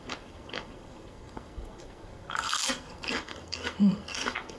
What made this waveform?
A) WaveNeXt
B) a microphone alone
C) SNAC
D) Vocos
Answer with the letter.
C